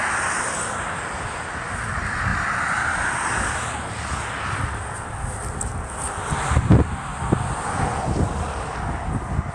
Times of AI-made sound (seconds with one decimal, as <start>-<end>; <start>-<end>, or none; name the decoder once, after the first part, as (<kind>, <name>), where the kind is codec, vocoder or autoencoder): none